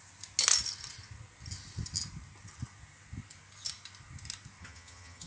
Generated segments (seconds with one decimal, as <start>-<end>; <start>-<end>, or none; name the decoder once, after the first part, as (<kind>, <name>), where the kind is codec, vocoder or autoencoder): 4.6-5.3 (vocoder, HiFi-GAN)